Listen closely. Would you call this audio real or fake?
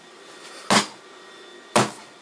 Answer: real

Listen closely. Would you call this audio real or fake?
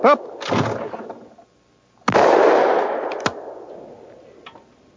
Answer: real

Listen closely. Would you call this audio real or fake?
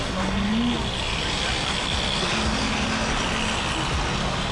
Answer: real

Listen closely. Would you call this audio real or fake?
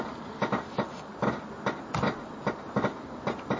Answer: real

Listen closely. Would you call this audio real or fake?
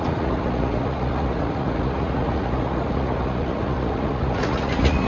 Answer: fake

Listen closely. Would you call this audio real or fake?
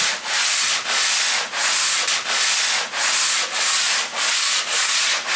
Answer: real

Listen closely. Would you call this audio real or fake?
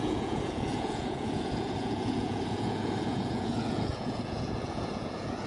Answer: fake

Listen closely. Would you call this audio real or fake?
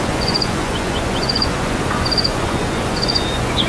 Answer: fake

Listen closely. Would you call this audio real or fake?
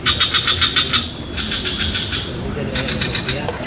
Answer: real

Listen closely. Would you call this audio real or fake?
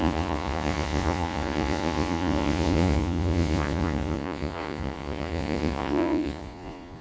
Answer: fake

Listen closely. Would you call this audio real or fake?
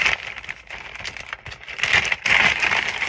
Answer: real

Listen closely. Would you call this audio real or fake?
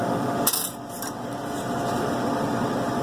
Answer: real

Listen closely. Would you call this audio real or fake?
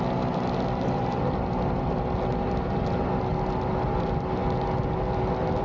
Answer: real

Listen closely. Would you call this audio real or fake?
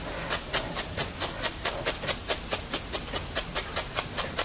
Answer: real